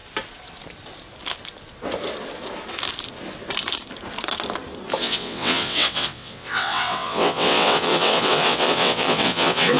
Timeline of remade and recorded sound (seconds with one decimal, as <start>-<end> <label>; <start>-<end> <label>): 0.0-5.0 recorded; 5.0-9.8 remade